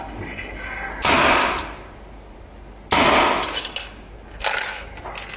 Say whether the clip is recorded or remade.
recorded